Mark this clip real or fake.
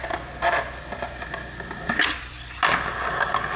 real